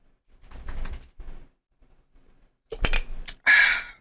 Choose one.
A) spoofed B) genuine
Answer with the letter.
B